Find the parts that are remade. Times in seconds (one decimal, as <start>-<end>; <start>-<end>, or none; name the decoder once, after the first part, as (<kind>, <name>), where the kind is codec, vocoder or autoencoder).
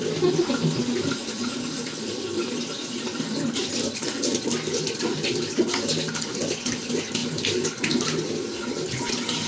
1.2-4.8 (vocoder, BigVGAN v2)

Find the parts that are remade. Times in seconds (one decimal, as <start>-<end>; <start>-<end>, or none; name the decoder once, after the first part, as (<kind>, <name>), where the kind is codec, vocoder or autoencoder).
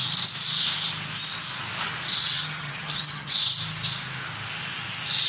2.2-3.3 (vocoder, HiFi-GAN)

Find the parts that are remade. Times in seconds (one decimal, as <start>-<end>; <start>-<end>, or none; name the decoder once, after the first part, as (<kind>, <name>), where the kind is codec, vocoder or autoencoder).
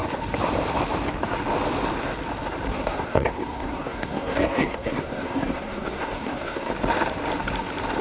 2.7-6.7 (codec, SNAC)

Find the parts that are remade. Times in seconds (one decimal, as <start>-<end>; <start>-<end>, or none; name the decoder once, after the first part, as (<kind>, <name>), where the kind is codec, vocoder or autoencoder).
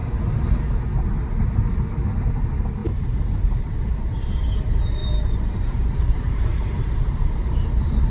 2.8-4.5 (vocoder, BigVGAN v2); 5.0-8.1